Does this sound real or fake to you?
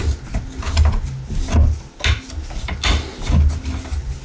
real